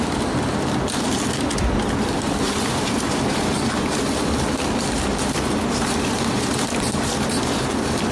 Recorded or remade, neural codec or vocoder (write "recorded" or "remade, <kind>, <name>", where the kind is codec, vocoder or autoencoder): remade, vocoder, BigVGAN v2